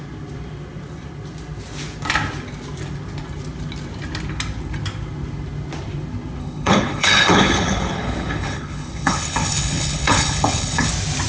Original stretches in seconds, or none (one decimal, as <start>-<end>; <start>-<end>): 0.0-6.4; 10.9-11.3